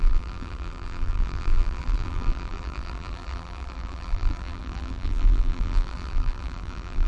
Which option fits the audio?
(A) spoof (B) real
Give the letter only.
A